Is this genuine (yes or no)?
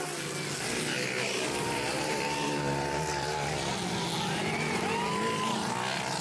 yes